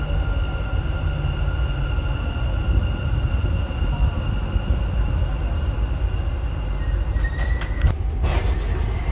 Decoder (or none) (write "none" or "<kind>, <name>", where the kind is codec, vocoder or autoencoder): none